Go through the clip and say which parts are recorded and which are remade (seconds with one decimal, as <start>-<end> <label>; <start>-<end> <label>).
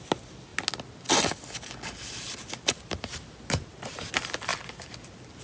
0.0-5.4 recorded